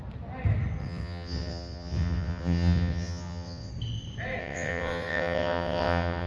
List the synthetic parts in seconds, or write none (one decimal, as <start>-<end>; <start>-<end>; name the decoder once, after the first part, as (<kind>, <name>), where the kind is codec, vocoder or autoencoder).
0.8-3.7 (vocoder, WaveNeXt); 4.4-6.3